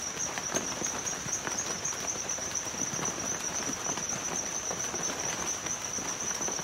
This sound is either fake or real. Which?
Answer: fake